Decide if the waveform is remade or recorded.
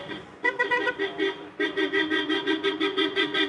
remade